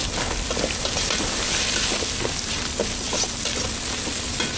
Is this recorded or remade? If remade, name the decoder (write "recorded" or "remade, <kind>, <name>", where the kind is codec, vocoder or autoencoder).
recorded